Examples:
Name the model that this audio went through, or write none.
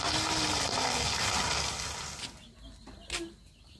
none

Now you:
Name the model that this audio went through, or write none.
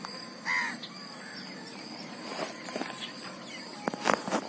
none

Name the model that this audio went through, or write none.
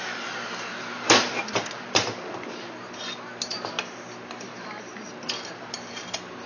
none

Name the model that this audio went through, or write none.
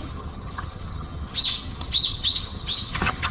vocoder, HiFi-GAN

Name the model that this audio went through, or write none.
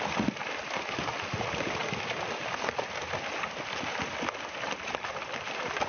none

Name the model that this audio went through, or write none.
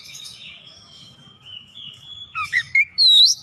codec, DAC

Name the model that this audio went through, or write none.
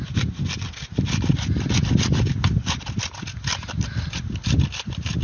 none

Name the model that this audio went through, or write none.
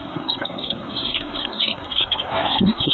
codec, SNAC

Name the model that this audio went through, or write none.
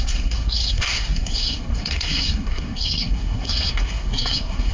codec, SNAC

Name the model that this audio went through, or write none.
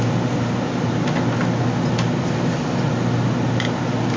none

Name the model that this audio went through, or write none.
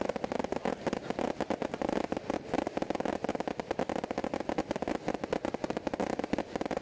none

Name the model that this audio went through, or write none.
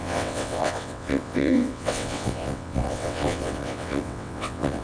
vocoder, WaveNeXt